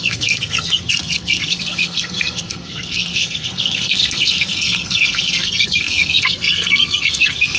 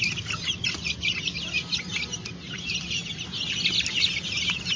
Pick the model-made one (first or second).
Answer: first